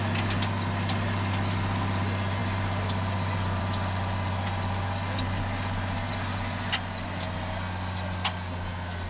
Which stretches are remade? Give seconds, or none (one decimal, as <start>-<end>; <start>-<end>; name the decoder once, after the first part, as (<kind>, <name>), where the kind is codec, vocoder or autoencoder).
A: none